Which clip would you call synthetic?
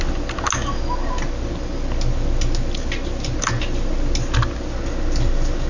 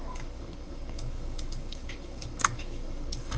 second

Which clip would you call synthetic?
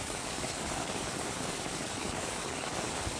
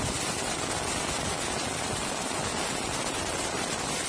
first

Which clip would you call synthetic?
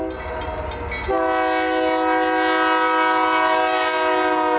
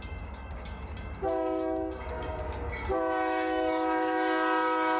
second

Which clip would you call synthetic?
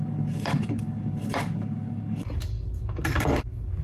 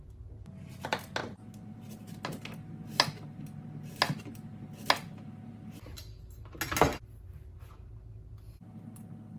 first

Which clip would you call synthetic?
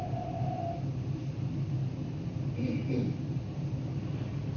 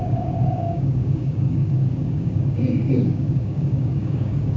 second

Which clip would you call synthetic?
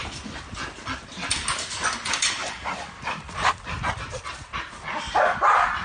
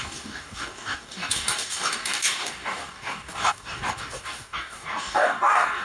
second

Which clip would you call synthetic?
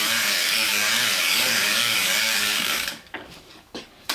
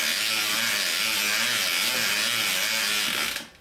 first